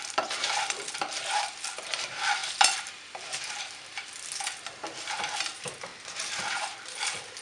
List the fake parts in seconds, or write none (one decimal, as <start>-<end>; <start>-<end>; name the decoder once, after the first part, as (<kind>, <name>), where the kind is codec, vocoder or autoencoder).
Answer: 0.0-5.9 (vocoder, BigVGAN v2)